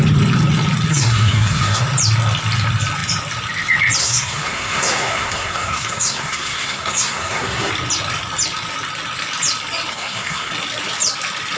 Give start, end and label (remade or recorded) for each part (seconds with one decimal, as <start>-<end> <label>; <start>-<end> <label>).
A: 0.0-0.9 recorded; 0.9-1.8 remade; 1.8-4.0 recorded; 4.0-7.7 remade; 7.7-9.9 recorded; 9.9-10.5 remade; 10.5-11.6 recorded